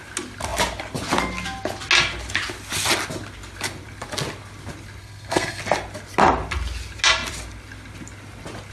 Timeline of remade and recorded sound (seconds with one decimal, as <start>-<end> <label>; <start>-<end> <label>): 0.0-5.0 recorded; 5.0-5.6 remade; 5.6-8.7 recorded